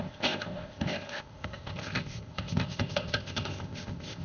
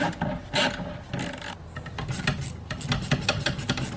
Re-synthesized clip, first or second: first